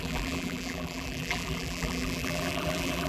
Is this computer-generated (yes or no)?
yes